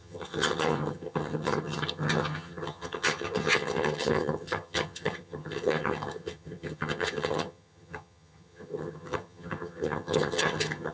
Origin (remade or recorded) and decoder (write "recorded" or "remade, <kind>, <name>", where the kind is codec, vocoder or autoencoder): remade, vocoder, HiFi-GAN